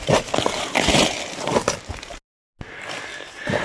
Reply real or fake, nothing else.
real